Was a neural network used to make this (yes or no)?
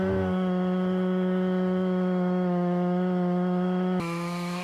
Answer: yes